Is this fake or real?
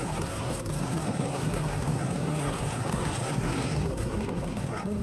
fake